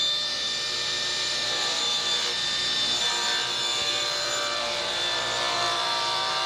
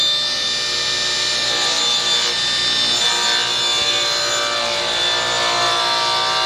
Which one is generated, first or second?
first